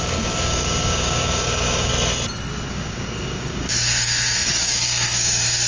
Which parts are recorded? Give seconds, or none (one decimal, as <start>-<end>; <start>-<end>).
1.9-2.7